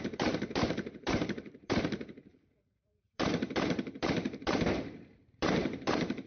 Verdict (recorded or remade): remade